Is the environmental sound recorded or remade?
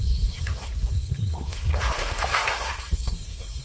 remade